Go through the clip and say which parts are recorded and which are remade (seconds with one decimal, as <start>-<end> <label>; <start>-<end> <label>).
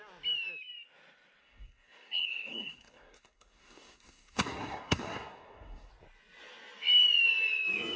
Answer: 0.0-1.4 recorded; 1.4-5.9 remade; 5.9-8.0 recorded